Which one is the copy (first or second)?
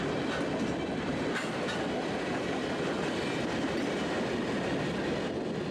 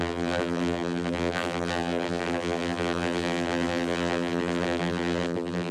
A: second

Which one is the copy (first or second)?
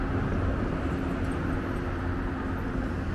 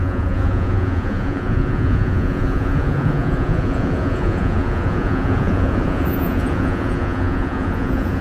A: second